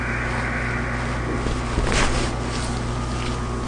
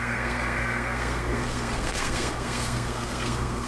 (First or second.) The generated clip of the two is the second